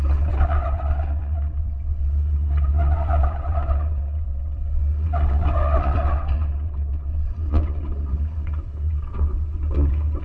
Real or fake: fake